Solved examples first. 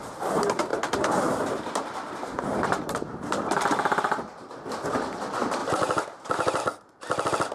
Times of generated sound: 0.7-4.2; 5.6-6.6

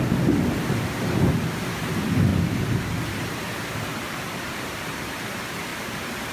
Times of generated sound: 2.3-3.0; 3.9-5.1; 5.7-6.3

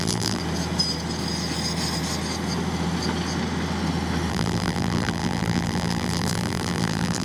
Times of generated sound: 0.0-0.4; 4.3-7.2

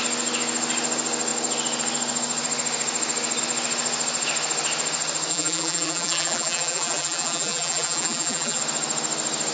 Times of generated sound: 5.3-8.6